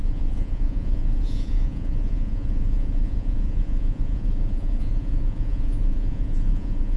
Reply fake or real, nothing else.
fake